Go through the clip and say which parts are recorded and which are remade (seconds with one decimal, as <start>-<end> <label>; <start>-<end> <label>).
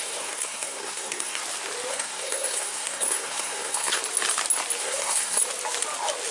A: 0.0-1.4 remade; 1.4-1.9 recorded; 1.9-4.0 remade; 4.0-4.8 recorded; 4.8-5.4 remade; 5.4-6.3 recorded